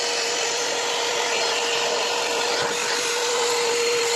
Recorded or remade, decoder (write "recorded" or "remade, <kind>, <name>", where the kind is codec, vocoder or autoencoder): remade, vocoder, BigVGAN v2